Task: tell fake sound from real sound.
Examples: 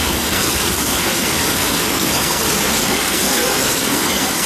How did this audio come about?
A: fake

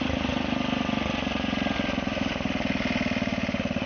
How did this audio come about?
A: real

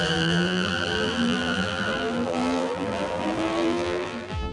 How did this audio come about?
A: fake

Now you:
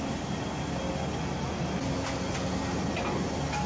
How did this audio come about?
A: real